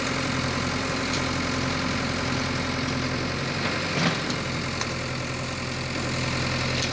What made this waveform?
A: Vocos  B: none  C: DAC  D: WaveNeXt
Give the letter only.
B